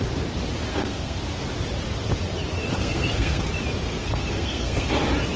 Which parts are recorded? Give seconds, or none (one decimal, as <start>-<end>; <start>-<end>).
0.0-0.7; 1.2-2.8; 3.4-4.0; 4.9-5.4